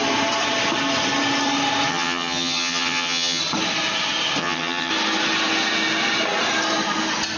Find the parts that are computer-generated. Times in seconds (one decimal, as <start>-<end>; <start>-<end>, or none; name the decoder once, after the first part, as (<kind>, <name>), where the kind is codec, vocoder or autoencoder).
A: 1.9-3.4 (vocoder, HiFi-GAN); 4.4-4.9